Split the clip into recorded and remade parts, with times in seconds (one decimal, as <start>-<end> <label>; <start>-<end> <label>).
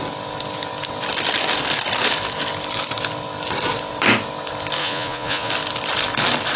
0.0-4.8 recorded; 4.8-5.5 remade; 5.5-6.6 recorded